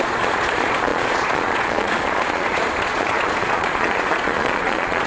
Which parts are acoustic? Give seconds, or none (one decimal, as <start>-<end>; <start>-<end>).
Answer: none